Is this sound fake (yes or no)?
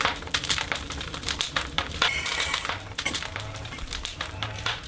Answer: yes